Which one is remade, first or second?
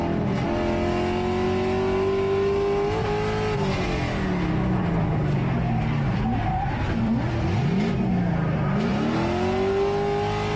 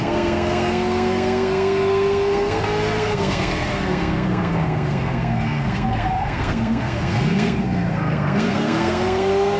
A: second